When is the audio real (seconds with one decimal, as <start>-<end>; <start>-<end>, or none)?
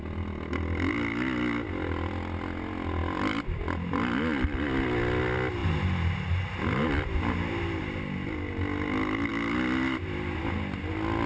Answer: 0.0-11.3